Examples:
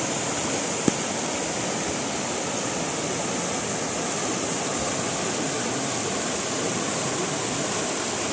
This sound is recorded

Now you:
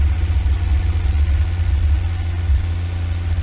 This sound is remade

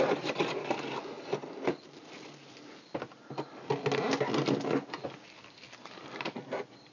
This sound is recorded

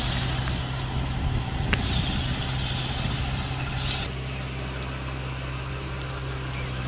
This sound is recorded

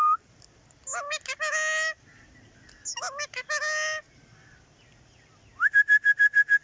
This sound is recorded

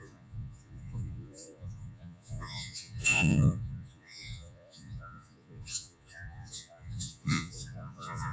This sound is remade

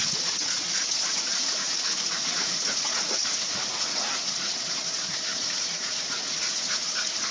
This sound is remade